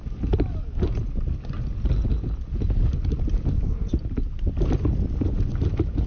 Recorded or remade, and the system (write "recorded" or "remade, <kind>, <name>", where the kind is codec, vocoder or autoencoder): recorded